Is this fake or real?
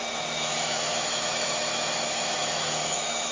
fake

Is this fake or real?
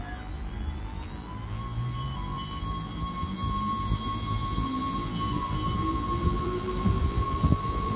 fake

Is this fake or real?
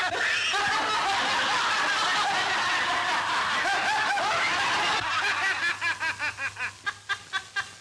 real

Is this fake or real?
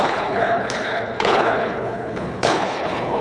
fake